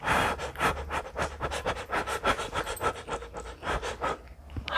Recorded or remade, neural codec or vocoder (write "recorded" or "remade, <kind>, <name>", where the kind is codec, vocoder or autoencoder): recorded